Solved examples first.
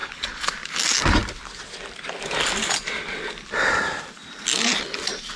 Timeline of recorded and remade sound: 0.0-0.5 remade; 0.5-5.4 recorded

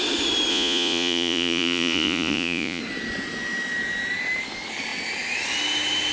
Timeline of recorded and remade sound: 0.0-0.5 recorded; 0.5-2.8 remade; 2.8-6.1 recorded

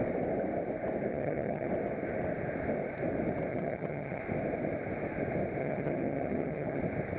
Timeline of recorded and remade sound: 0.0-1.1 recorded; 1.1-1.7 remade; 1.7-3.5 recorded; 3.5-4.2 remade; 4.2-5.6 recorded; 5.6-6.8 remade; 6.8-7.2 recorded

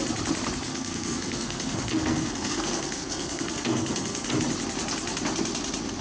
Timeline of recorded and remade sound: 0.0-0.7 recorded; 0.7-4.3 remade; 4.3-6.0 recorded

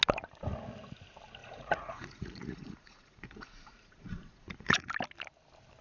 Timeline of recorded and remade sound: 0.0-1.4 recorded; 1.4-4.9 remade; 4.9-5.8 recorded

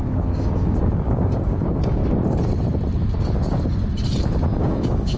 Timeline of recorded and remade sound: 0.0-2.0 remade; 2.0-4.6 recorded; 4.6-5.2 remade

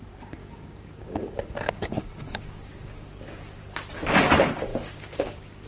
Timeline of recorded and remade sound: 0.0-0.4 recorded; 0.4-3.6 remade; 3.6-4.7 recorded; 4.7-5.7 remade